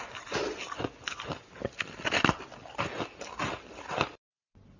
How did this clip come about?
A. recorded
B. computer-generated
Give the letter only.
A